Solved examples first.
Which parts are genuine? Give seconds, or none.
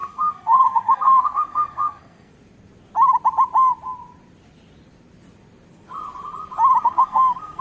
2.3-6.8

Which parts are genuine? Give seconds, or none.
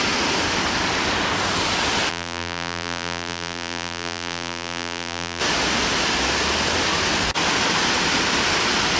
0.0-2.1; 5.4-9.0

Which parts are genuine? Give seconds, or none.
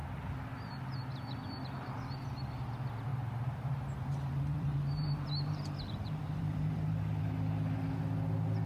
0.0-3.1; 7.2-8.7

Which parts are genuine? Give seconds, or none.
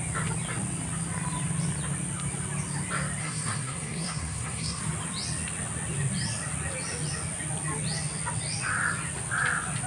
0.0-3.2; 4.8-9.9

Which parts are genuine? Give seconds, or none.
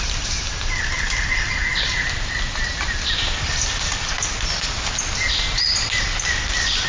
0.0-6.9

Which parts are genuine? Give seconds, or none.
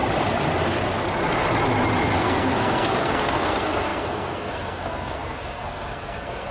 0.0-2.2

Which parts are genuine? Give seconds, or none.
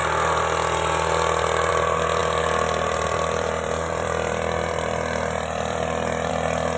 0.0-2.2; 6.3-6.8